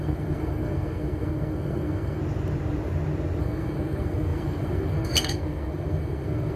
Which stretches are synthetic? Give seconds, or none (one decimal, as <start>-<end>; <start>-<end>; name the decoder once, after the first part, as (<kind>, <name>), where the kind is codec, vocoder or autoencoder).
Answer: 0.0-2.2 (codec, SNAC); 3.4-6.6